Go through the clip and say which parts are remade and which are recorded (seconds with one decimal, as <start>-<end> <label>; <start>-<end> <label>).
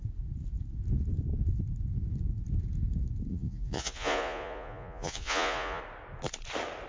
0.0-3.3 recorded; 3.3-5.8 remade; 5.8-6.9 recorded